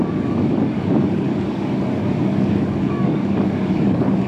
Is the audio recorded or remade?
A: remade